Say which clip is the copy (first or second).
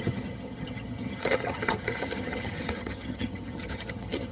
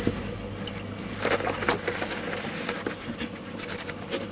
first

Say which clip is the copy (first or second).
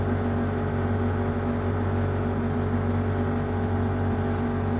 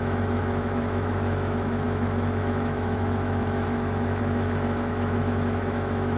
second